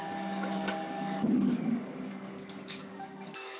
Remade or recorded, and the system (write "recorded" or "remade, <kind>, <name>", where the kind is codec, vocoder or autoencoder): remade, codec, DAC